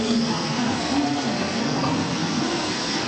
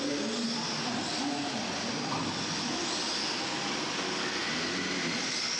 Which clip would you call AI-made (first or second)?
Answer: first